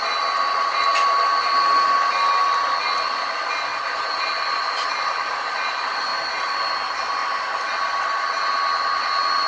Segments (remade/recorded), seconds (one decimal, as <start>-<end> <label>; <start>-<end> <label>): 0.0-9.5 recorded